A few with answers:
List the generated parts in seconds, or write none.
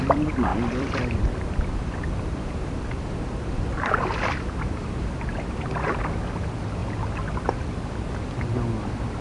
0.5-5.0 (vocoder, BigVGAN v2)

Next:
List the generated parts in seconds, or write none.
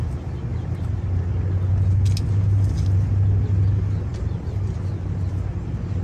0.5-1.1 (vocoder, BigVGAN v2); 4.1-5.3